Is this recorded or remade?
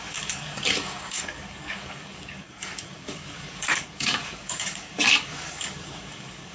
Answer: remade